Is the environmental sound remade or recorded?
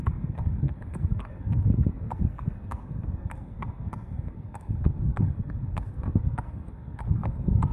remade